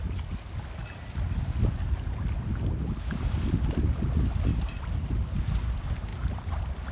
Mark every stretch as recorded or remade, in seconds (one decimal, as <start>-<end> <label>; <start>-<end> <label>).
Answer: 0.0-6.9 recorded